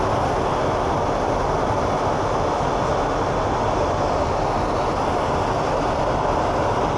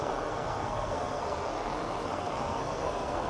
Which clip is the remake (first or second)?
second